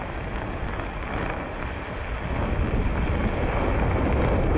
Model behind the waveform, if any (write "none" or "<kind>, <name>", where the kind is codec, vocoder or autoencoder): none